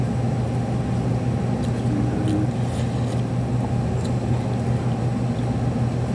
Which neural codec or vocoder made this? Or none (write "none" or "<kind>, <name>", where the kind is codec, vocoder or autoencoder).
none